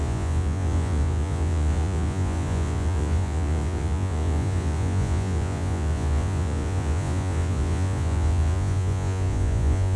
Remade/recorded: remade